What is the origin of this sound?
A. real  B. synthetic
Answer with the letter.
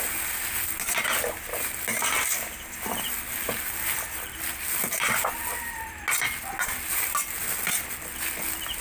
A